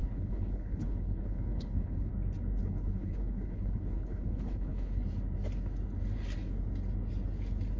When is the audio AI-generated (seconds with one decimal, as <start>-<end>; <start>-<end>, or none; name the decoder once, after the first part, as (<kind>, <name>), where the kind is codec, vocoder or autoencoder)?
0.0-2.1 (codec, HILCodec); 2.6-5.0